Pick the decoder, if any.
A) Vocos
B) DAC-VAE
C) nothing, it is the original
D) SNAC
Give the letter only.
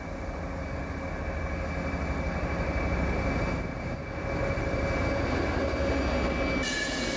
C